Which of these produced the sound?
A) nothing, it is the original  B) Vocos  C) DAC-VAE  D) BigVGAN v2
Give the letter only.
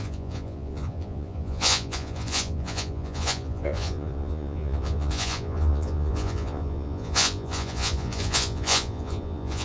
B